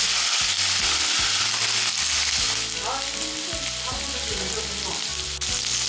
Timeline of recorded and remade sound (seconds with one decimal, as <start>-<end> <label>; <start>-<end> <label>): 0.0-5.1 recorded; 5.1-5.9 remade